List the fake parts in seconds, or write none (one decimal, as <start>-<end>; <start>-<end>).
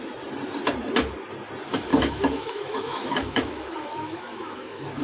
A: 1.9-5.0